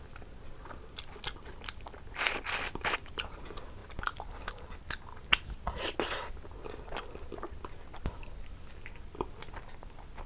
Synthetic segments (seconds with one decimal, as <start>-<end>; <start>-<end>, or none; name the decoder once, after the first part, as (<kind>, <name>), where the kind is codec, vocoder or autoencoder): none